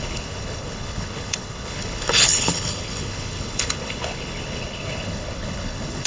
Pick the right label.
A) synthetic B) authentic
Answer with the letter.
A